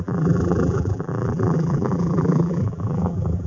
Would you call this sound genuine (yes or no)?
no